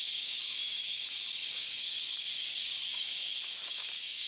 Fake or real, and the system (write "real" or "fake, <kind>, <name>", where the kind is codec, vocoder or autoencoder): fake, codec, DAC